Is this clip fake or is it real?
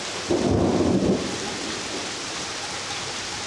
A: real